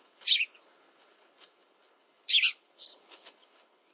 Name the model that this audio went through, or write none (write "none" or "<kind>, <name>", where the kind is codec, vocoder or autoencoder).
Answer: codec, HILCodec